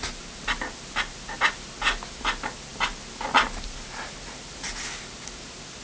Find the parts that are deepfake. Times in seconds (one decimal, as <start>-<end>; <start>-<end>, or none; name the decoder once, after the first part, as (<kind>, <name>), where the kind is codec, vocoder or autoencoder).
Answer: none